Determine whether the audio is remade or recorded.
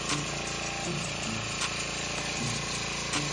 recorded